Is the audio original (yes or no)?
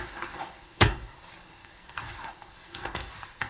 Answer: no